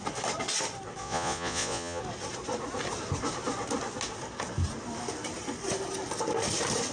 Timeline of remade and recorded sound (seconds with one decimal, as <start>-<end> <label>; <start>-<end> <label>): 0.0-1.0 recorded; 1.0-2.0 remade; 2.0-6.9 recorded

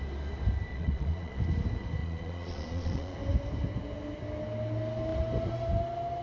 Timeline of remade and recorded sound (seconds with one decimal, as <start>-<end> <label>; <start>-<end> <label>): 0.0-0.7 recorded; 0.7-1.4 remade; 1.4-2.0 recorded; 2.0-3.2 remade; 3.2-6.2 recorded

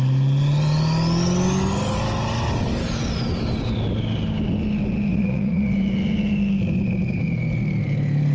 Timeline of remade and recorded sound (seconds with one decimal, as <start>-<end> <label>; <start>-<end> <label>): 0.0-5.1 recorded; 5.1-5.7 remade; 5.7-8.3 recorded

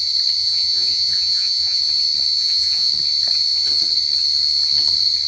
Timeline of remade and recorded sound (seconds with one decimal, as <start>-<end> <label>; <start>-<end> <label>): 0.0-0.4 recorded; 0.4-1.8 remade; 1.8-2.4 recorded; 2.4-2.9 remade; 2.9-5.3 recorded

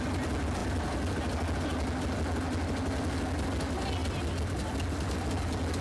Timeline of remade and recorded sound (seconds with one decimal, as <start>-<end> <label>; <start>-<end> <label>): 0.0-5.8 recorded